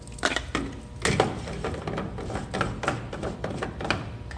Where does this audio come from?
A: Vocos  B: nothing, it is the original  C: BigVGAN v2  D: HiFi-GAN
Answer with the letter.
B